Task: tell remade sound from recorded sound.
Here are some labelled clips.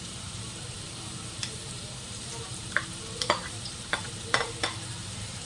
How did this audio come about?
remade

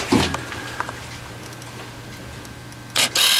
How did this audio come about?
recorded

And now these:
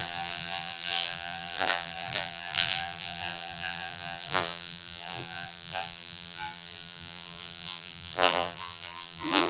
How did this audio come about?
remade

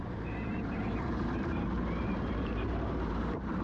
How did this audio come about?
remade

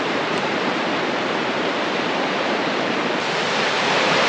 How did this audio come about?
remade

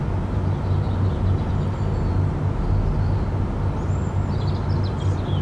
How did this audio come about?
recorded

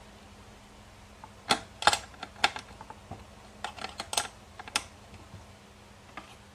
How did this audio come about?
recorded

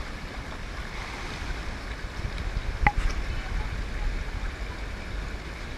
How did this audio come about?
recorded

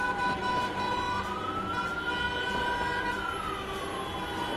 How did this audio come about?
recorded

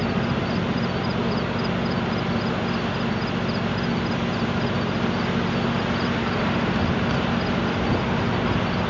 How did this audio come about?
recorded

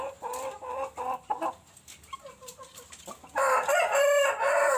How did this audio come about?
recorded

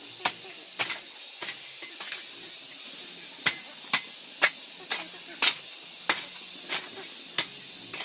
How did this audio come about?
recorded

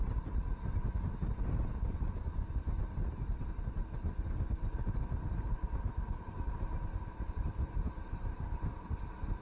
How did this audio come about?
recorded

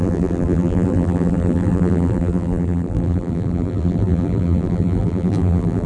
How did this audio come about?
remade